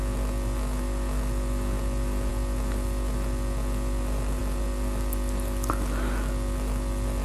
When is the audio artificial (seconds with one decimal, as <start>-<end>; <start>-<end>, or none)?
none